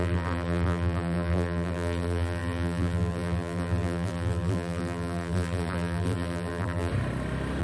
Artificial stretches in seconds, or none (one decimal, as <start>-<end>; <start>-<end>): 0.0-6.9